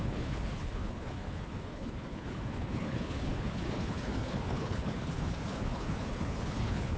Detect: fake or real fake